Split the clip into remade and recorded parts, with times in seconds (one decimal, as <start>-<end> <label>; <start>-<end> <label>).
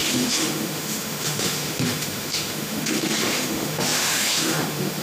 0.0-5.0 remade